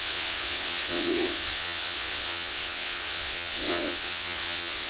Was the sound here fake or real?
fake